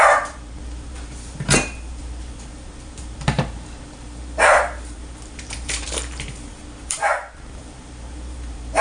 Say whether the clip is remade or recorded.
remade